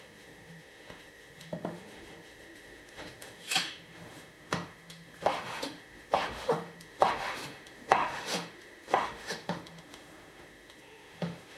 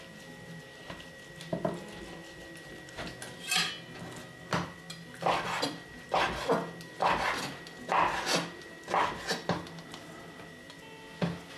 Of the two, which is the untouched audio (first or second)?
second